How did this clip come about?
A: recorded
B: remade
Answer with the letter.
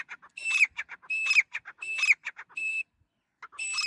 A